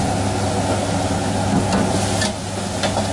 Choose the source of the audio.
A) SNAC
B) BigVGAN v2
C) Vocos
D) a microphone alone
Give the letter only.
D